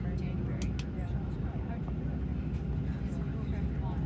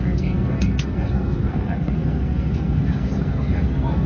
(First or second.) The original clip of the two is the first